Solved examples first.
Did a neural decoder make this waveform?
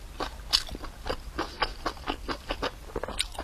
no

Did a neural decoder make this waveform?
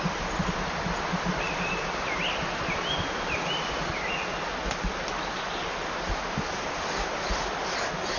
no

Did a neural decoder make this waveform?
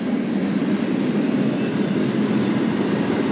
no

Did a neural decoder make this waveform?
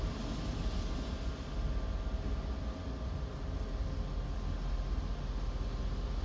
no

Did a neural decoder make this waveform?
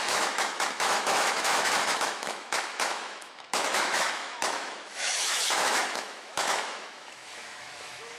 yes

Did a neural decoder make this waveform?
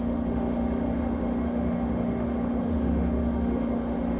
yes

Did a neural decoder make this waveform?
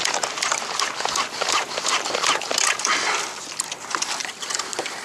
no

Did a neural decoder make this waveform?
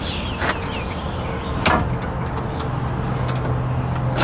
no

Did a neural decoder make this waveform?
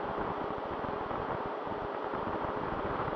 yes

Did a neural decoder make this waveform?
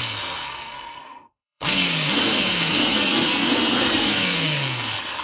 yes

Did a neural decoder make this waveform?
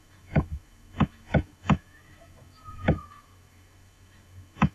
yes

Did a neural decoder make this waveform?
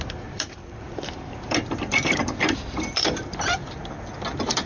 yes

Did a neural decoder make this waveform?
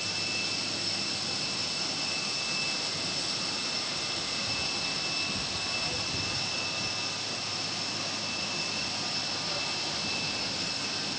no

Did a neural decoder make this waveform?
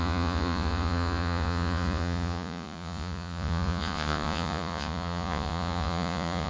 yes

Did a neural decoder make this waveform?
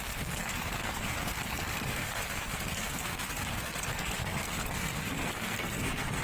yes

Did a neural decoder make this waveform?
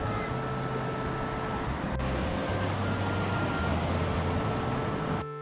no